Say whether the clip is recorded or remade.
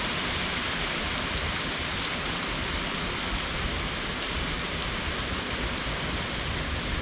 recorded